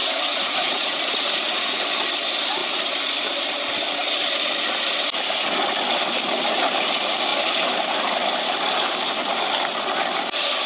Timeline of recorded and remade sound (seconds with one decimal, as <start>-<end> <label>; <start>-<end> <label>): 0.0-1.9 remade; 1.9-10.7 recorded